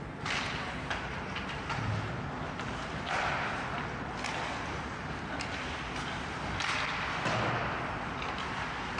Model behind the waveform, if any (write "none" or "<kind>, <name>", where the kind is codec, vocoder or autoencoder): none